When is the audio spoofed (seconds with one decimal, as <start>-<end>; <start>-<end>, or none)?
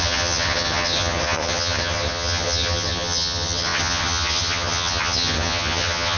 0.0-6.2